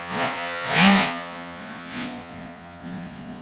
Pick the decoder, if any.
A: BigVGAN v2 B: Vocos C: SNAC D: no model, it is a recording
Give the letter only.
B